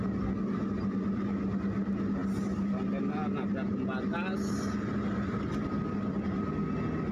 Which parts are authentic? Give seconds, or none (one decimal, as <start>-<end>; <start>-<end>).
0.0-7.1